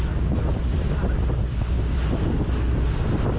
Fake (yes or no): no